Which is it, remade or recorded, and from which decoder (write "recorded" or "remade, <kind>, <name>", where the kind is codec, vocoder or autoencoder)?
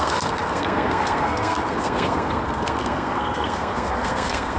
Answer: remade, codec, SNAC